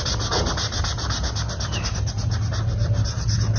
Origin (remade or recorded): recorded